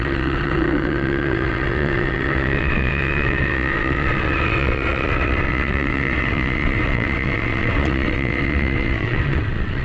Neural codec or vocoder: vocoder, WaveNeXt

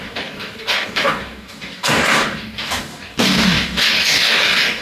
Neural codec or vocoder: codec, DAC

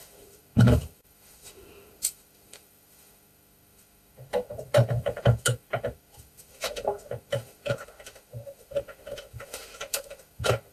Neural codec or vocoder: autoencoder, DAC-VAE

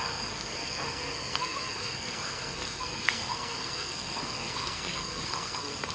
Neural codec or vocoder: codec, SNAC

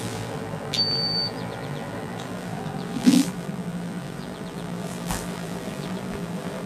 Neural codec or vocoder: vocoder, BigVGAN v2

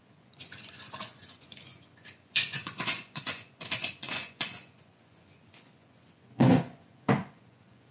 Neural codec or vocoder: vocoder, Vocos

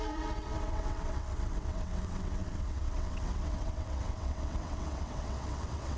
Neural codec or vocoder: vocoder, WaveNeXt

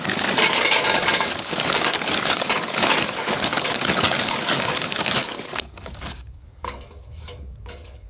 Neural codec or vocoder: codec, DAC